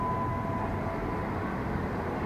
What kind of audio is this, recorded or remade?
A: recorded